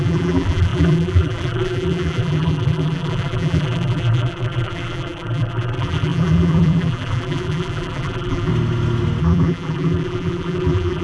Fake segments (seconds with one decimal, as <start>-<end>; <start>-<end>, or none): 0.0-8.5; 9.2-11.0